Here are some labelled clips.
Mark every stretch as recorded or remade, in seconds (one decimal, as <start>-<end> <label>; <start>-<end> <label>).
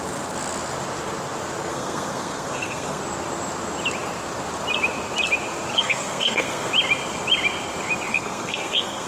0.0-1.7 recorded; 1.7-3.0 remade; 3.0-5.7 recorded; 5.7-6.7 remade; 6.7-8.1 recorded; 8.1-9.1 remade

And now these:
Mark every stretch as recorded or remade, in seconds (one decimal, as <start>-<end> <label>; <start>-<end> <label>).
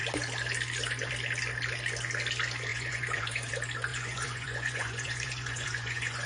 0.0-2.7 recorded; 2.7-3.5 remade; 3.5-3.9 recorded; 3.9-6.3 remade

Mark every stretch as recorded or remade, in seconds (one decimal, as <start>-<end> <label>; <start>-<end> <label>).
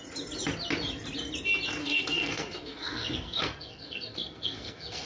0.0-1.8 recorded; 1.8-5.1 remade